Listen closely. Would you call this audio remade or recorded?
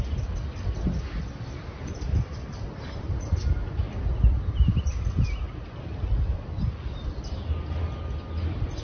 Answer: recorded